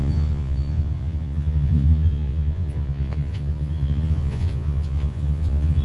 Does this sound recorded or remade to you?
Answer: remade